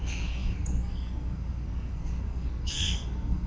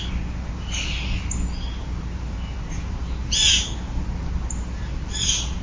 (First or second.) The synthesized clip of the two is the first